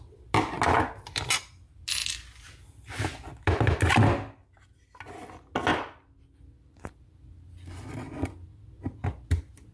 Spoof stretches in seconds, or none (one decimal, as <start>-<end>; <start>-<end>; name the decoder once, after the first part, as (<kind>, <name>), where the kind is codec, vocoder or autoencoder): none